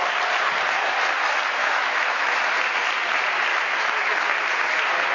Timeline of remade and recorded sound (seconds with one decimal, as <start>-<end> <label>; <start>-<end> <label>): 0.0-1.6 recorded; 1.6-2.4 remade; 2.4-3.5 recorded; 3.5-4.1 remade; 4.1-5.1 recorded